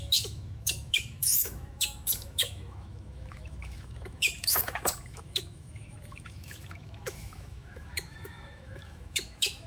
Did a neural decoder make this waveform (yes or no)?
yes